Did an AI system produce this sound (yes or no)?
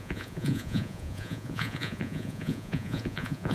yes